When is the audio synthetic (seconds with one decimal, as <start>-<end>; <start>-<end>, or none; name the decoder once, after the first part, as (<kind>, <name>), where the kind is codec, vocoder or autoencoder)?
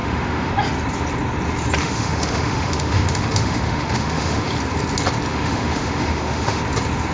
0.0-0.5 (autoencoder, DAC-VAE); 1.8-4.5; 5.3-6.6